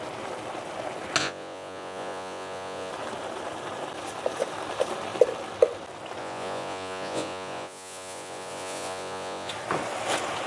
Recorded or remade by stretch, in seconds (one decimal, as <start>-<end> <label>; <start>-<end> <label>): 0.0-1.2 recorded; 1.2-2.9 remade; 2.9-6.2 recorded; 6.2-9.5 remade; 9.5-10.5 recorded